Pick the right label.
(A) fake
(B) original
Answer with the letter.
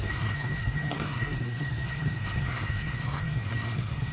A